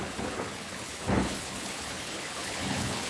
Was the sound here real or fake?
fake